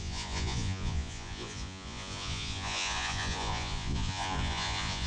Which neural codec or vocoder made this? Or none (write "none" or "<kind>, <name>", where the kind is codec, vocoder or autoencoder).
vocoder, Vocos